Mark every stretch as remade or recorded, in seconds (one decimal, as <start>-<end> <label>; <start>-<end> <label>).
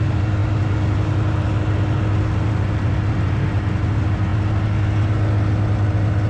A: 0.0-6.3 recorded